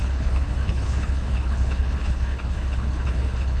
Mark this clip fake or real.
fake